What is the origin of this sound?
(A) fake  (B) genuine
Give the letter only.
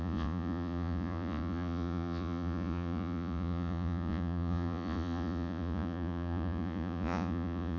A